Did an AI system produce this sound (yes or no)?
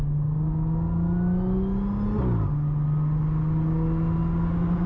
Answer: no